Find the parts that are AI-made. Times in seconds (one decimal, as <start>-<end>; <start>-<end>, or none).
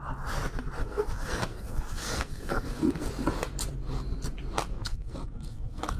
0.8-3.1; 4.7-6.0